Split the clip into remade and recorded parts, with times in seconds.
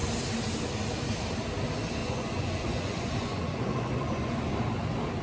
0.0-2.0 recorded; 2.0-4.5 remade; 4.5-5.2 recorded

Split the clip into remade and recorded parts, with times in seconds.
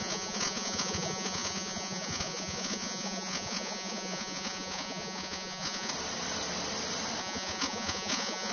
0.0-5.9 remade; 5.9-7.2 recorded; 7.2-8.5 remade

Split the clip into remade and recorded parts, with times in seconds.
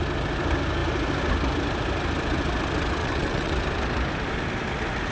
0.0-3.0 recorded; 3.0-3.5 remade; 3.5-5.1 recorded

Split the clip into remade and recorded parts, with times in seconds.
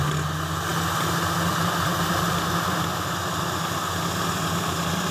0.0-5.1 recorded